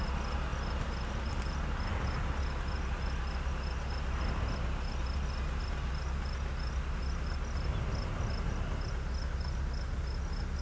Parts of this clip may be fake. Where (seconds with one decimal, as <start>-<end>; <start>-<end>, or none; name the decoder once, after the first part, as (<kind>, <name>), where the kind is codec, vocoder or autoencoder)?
none